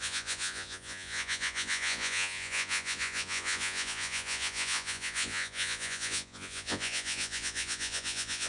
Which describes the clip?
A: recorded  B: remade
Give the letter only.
B